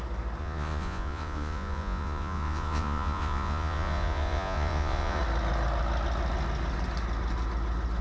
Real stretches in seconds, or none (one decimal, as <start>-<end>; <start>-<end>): 0.0-0.4; 5.2-8.0